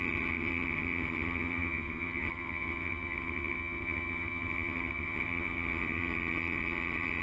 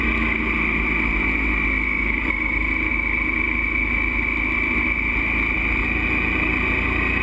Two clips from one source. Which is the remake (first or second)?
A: first